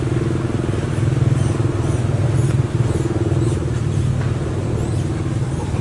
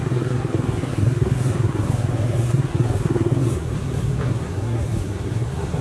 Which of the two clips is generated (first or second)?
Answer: second